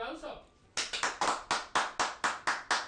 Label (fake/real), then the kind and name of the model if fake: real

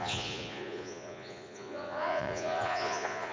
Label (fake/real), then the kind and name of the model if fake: fake, vocoder, Vocos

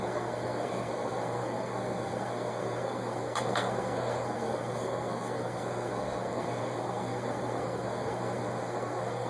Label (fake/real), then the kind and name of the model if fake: fake, codec, SNAC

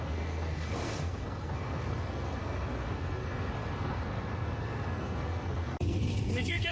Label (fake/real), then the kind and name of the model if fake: fake, codec, SNAC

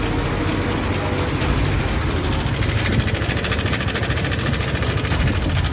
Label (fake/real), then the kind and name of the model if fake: real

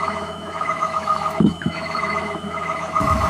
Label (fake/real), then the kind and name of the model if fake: fake, autoencoder, DAC-VAE